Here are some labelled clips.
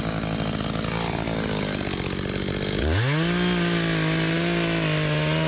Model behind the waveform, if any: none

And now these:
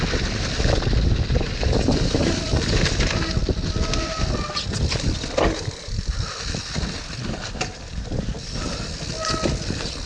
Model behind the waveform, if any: none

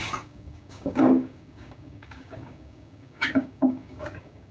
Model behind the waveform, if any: codec, DAC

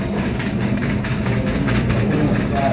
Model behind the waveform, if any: codec, DAC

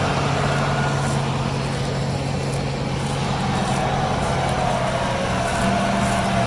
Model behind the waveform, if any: none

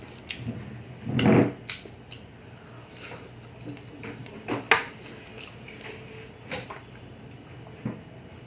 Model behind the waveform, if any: none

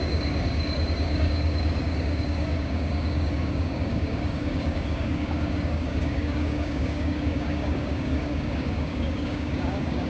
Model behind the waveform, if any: codec, DAC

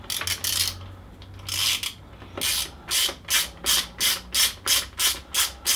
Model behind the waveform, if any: none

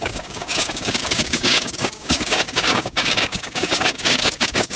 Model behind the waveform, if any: codec, DAC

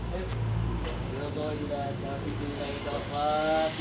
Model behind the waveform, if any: codec, DAC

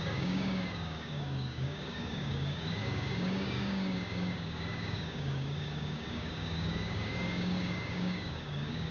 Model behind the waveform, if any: codec, DAC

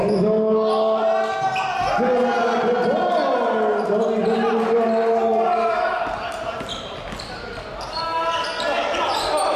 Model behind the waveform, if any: none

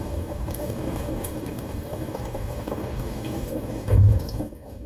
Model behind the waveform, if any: codec, DAC